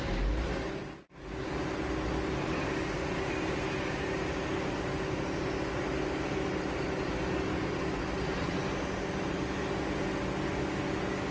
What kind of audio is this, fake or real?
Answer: real